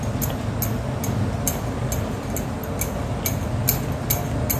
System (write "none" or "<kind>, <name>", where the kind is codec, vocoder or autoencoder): none